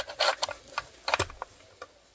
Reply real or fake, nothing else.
real